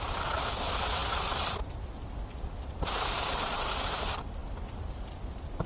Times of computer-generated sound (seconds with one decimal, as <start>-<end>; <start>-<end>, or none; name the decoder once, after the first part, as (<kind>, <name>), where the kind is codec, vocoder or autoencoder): none